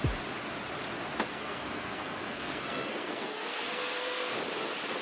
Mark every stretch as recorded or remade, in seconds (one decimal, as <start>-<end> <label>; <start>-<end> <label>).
0.0-1.3 recorded; 1.3-4.3 remade; 4.3-5.0 recorded